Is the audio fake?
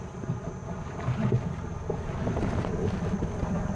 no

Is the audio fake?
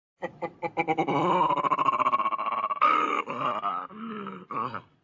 no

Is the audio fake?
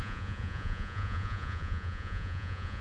yes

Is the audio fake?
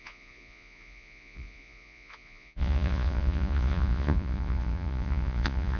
yes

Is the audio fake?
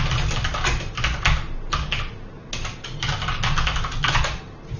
no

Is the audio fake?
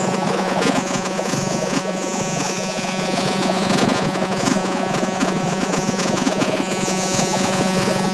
yes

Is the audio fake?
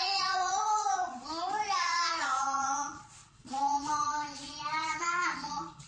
yes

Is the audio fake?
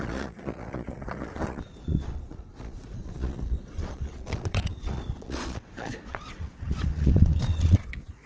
yes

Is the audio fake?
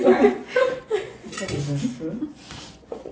yes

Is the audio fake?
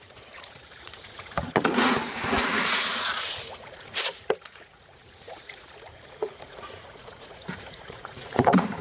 yes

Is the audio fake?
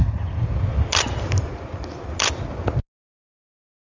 no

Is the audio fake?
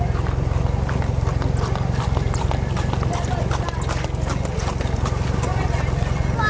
no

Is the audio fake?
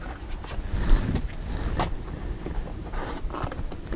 no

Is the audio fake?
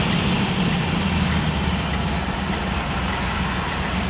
no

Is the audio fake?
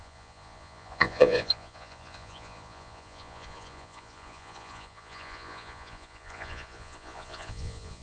yes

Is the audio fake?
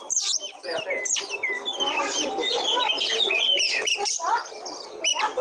no